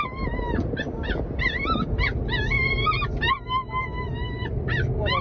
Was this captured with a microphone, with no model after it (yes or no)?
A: yes